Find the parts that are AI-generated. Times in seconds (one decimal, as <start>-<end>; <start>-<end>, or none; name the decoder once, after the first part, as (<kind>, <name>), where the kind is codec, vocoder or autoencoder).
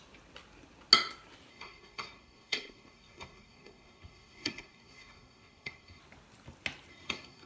1.5-6.0 (codec, SNAC); 6.9-7.5